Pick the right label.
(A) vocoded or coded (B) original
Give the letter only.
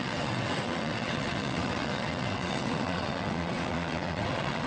A